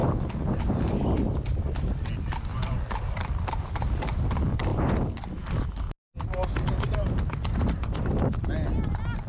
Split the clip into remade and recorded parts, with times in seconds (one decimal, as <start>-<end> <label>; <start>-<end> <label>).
0.0-2.1 remade; 2.1-2.5 recorded; 2.5-4.0 remade; 4.0-9.3 recorded